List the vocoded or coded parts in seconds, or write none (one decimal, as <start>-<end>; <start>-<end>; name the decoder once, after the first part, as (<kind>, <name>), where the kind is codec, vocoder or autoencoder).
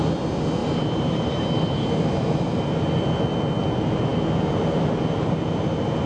0.6-2.6 (vocoder, BigVGAN v2)